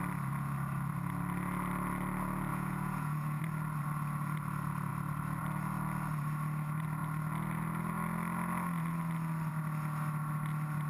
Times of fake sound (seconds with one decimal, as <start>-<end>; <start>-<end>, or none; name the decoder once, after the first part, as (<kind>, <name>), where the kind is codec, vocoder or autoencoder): 2.5-3.4 (vocoder, Vocos)